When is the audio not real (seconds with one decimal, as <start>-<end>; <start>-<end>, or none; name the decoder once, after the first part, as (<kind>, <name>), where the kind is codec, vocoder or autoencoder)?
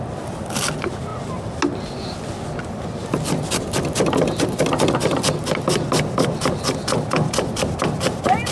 none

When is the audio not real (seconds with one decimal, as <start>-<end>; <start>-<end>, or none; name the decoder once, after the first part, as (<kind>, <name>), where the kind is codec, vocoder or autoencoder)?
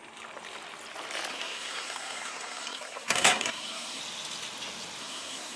1.3-4.0 (codec, SNAC); 5.0-5.6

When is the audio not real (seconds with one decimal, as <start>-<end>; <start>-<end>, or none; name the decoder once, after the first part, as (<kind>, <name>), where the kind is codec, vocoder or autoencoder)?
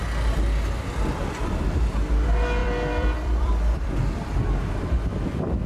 2.6-4.0 (vocoder, BigVGAN v2)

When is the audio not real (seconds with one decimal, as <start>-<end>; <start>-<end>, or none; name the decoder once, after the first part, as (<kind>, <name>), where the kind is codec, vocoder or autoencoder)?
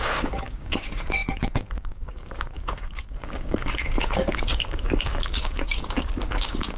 0.0-6.8 (codec, DAC)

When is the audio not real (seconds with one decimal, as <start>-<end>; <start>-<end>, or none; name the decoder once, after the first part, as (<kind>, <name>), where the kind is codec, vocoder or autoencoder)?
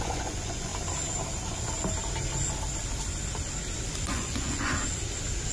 0.0-0.7 (vocoder, Vocos); 4.0-4.7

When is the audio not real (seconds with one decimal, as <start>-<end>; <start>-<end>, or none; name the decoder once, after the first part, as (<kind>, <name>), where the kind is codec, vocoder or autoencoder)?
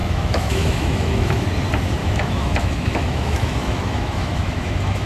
0.0-1.5 (autoencoder, DAC-VAE); 2.0-5.1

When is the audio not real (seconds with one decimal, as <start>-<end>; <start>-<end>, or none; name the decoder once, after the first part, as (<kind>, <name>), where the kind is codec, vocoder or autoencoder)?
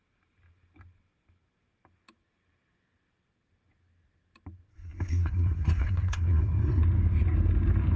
4.7-6.8 (codec, SNAC)